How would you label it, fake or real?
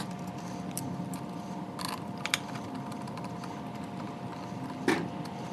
real